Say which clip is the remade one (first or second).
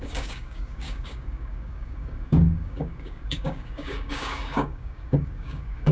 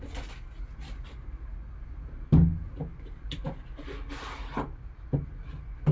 first